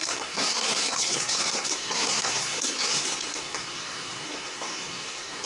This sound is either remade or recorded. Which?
remade